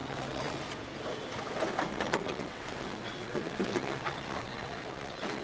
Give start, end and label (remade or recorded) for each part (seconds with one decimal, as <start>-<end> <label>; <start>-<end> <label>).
0.0-0.6 remade; 0.6-1.9 recorded; 1.9-5.4 remade